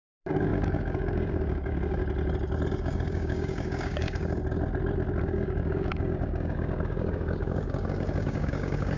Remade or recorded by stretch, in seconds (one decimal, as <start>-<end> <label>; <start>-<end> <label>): 0.0-2.0 remade; 2.0-2.8 recorded; 2.8-4.4 remade; 4.4-5.2 recorded; 5.2-9.0 remade